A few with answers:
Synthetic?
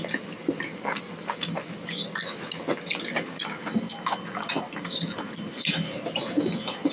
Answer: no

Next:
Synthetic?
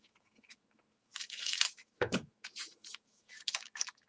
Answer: yes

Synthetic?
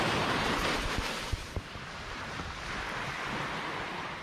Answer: no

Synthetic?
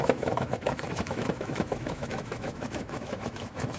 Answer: yes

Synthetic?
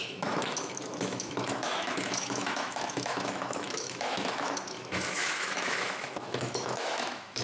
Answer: yes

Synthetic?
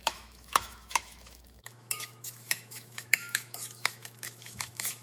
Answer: yes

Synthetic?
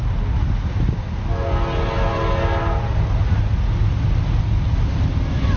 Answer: no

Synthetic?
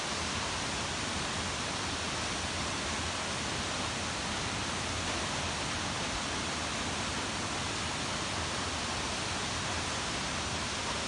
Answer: no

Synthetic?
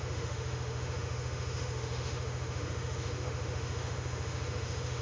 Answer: yes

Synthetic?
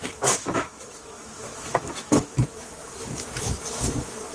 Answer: yes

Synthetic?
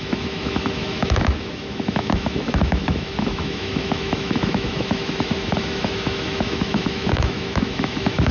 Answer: yes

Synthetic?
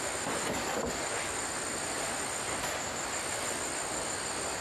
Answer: no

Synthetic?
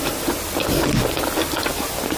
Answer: no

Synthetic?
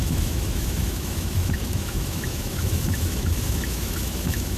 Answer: yes